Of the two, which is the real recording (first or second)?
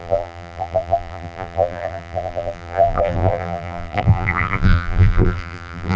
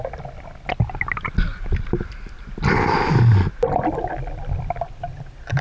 second